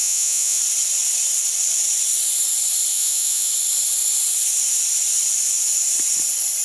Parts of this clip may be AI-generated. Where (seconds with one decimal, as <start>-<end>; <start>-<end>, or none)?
0.0-0.6; 2.9-3.5